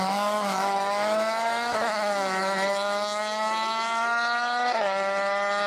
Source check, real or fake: fake